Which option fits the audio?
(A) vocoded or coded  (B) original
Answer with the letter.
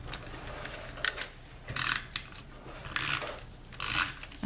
B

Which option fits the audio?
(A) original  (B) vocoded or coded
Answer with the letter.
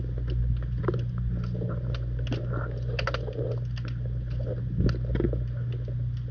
A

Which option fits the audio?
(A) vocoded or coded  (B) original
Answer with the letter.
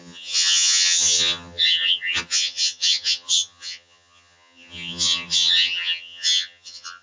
A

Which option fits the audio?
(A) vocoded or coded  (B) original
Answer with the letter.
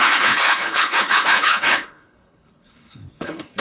A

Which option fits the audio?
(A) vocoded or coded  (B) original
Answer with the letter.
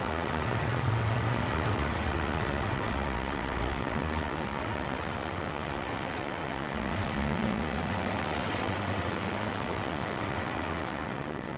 A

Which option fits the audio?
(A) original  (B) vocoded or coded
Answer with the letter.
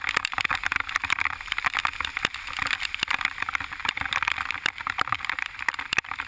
B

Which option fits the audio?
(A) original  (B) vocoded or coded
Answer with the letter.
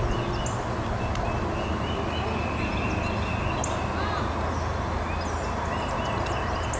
A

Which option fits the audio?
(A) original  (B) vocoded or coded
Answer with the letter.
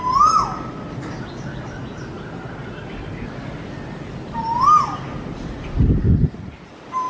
A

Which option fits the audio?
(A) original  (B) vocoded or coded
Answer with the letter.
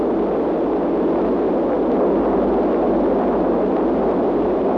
A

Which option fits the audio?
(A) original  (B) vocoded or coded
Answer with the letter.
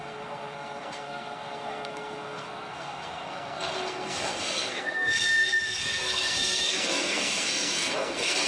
B